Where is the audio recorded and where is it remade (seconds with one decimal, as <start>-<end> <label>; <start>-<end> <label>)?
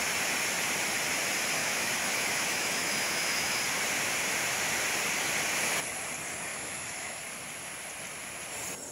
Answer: 0.0-1.6 recorded; 1.6-3.6 remade; 3.6-6.5 recorded; 6.5-7.2 remade; 7.2-8.9 recorded